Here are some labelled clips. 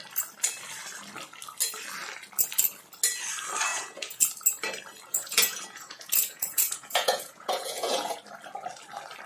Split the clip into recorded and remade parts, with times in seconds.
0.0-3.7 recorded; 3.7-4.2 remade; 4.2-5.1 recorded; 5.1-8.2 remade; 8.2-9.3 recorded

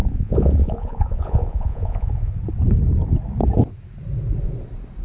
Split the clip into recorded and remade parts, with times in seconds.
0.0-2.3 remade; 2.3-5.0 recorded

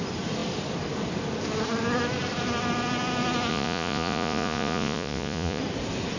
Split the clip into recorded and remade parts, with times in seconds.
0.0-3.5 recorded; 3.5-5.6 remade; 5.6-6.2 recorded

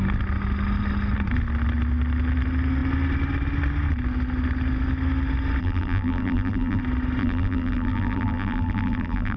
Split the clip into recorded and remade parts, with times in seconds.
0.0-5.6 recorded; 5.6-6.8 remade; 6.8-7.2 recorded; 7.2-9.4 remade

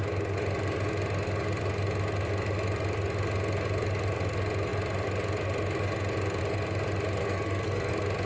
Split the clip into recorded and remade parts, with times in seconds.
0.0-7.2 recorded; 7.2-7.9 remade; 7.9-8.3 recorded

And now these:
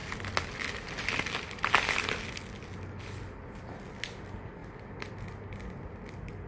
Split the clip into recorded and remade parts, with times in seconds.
0.0-6.5 recorded

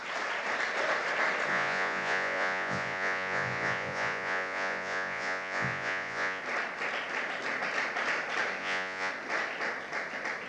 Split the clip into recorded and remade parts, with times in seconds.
0.0-1.5 recorded; 1.5-6.4 remade; 6.4-8.6 recorded; 8.6-9.1 remade; 9.1-10.5 recorded

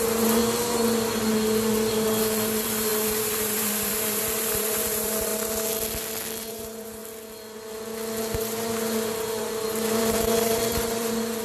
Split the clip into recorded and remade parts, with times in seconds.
0.0-0.4 remade; 0.4-1.9 recorded; 1.9-5.3 remade; 5.3-6.5 recorded; 6.5-7.0 remade; 7.0-8.2 recorded; 8.2-11.4 remade